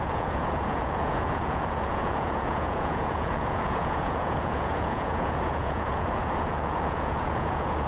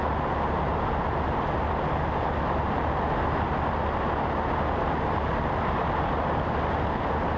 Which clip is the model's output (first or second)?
first